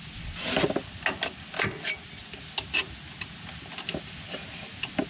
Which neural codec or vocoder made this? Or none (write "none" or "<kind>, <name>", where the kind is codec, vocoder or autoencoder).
none